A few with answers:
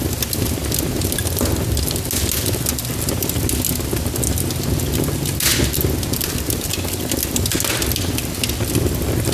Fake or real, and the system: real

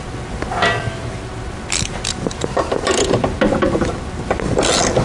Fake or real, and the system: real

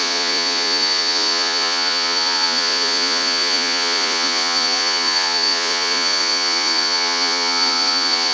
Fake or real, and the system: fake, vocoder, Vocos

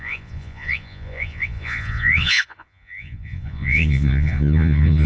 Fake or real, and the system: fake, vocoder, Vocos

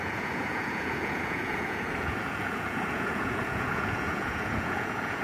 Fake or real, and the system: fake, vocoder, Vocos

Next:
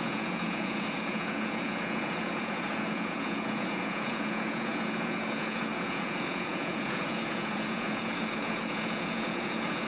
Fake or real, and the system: fake, vocoder, Vocos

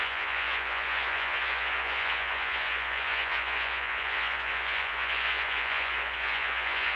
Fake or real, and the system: fake, vocoder, Vocos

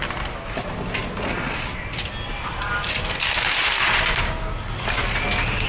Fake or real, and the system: real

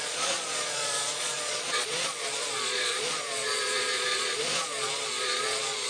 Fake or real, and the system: fake, vocoder, Vocos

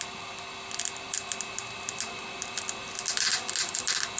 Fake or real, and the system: real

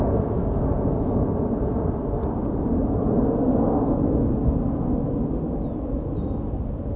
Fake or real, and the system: real